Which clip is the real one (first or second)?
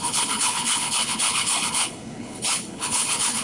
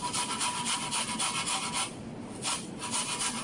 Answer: second